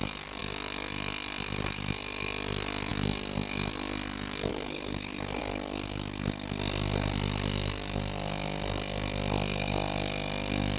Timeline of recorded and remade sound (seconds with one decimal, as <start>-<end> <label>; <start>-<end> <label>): 0.0-4.5 recorded; 4.5-5.4 remade; 5.4-10.8 recorded